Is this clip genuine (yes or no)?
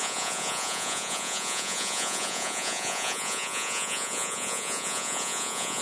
no